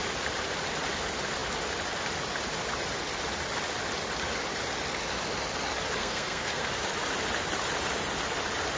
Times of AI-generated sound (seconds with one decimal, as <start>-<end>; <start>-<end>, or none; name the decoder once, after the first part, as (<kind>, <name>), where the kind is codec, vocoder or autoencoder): 6.0-6.6 (codec, SNAC)

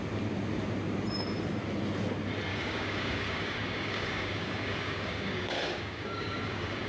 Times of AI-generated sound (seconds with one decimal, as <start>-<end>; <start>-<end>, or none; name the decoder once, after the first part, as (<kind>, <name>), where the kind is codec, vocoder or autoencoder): 2.5-6.9 (codec, DAC)

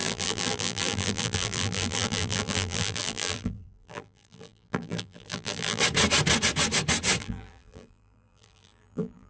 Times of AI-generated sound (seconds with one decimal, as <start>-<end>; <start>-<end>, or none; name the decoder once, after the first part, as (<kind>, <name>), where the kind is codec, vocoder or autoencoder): 0.0-5.8 (vocoder, BigVGAN v2); 7.2-9.3

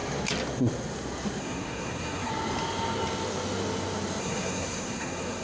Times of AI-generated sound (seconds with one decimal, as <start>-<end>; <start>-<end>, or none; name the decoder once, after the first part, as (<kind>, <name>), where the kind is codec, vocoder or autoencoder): 1.4-2.3 (codec, SNAC); 4.2-5.4